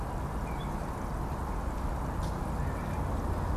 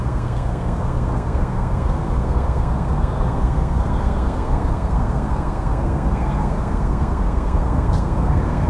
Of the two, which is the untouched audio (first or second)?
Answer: first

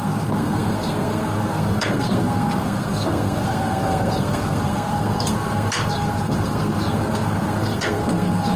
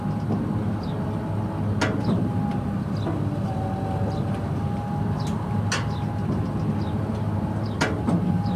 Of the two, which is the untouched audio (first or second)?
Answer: second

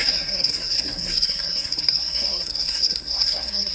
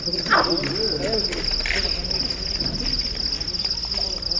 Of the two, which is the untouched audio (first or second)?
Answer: second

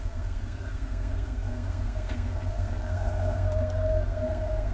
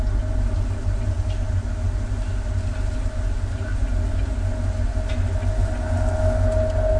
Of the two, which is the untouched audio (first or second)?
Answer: second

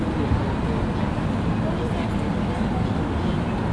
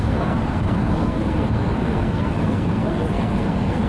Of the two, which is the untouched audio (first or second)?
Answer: first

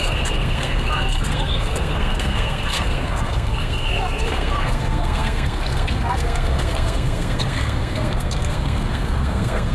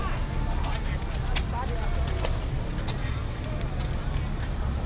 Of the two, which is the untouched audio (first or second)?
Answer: second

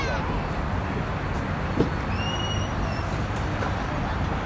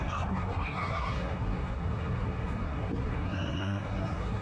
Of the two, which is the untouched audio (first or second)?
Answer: first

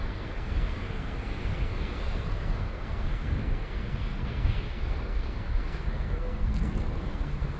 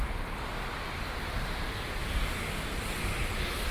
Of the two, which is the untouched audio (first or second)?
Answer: second